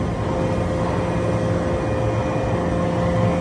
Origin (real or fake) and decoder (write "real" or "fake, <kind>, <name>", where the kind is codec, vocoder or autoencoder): real